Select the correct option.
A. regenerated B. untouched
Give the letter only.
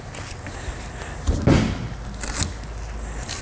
B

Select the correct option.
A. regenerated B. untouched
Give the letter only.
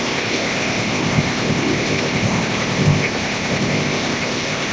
A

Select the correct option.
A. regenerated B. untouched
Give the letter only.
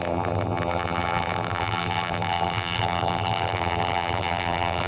A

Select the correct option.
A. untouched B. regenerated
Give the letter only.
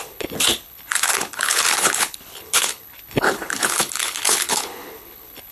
B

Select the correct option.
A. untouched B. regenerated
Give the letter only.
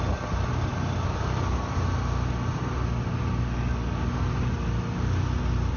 A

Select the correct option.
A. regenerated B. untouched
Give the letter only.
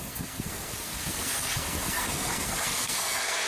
A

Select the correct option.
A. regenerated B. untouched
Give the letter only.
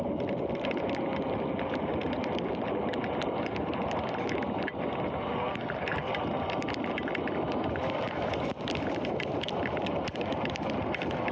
B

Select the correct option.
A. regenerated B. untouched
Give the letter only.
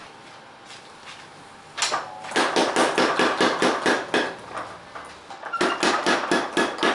B